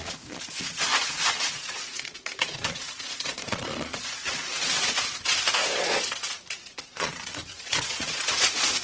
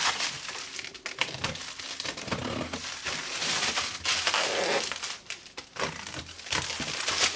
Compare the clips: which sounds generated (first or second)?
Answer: first